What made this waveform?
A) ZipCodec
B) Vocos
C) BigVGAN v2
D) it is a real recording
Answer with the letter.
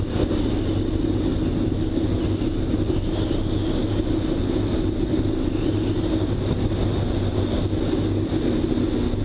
D